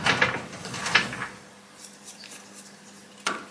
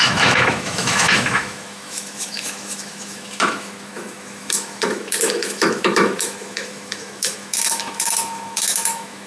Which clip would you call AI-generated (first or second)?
second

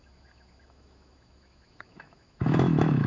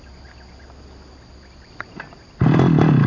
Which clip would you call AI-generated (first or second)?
first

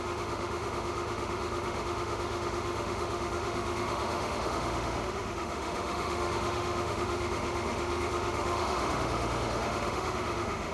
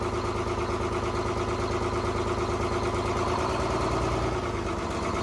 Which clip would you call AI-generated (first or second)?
first